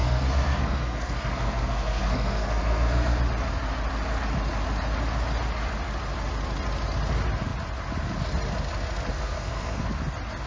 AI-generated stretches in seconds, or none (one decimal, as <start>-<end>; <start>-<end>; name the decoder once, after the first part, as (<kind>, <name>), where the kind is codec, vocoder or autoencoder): 0.0-3.2 (codec, SNAC); 9.1-9.9